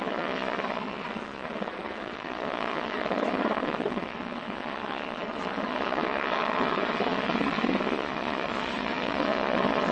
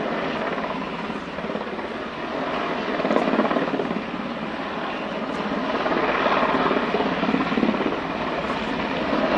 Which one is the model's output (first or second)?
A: first